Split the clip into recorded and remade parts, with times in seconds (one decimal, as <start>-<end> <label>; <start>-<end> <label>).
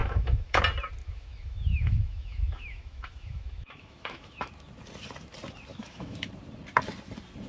0.0-0.6 remade; 0.6-1.0 recorded; 1.0-4.5 remade; 4.5-5.7 recorded; 5.7-6.3 remade; 6.3-7.5 recorded